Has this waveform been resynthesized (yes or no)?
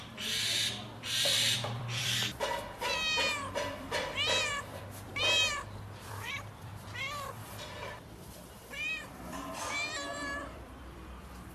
yes